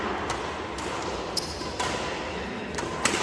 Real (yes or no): yes